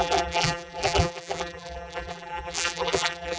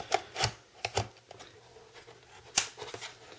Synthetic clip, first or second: first